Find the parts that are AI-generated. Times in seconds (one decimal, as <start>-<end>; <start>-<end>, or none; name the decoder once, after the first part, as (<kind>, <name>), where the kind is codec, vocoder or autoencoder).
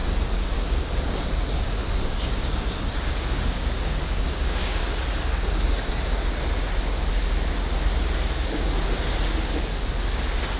1.8-4.8 (codec, DAC)